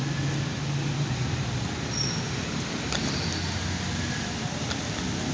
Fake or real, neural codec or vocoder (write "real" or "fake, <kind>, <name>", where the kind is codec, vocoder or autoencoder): real